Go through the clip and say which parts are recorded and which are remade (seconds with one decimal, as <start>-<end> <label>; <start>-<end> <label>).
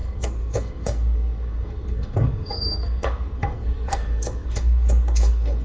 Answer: 0.0-5.6 remade